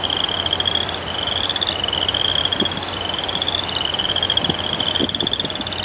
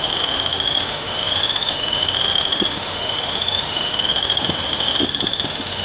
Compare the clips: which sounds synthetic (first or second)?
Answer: second